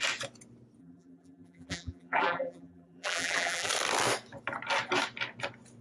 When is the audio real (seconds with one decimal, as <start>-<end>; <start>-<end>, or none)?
0.0-0.8; 3.7-5.8